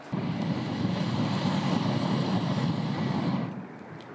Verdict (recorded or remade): recorded